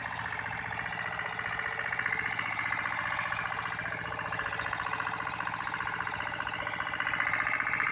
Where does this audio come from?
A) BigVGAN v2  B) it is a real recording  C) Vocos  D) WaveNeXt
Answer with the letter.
B